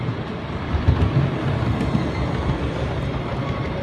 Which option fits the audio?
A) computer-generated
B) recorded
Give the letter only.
B